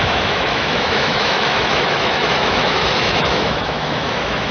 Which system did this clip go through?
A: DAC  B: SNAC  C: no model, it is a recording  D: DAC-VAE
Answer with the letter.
D